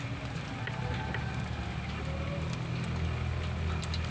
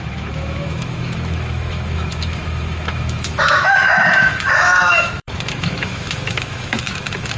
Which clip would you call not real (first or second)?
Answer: second